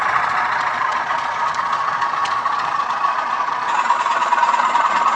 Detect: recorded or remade remade